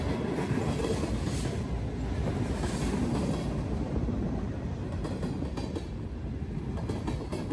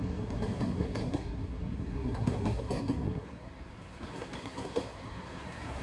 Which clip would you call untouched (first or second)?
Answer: first